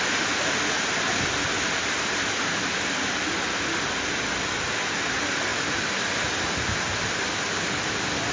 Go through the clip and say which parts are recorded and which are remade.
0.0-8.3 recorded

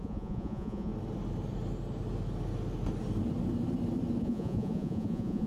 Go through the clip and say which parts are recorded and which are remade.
0.0-0.9 remade; 0.9-4.2 recorded; 4.2-5.5 remade